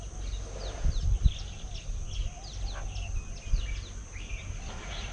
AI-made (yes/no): no